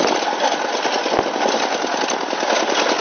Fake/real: real